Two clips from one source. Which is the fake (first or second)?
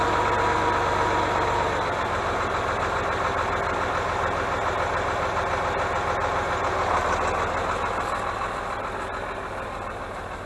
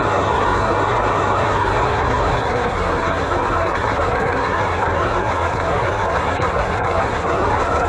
second